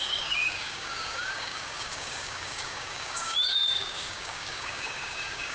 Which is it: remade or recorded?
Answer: remade